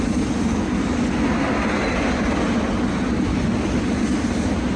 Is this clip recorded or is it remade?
recorded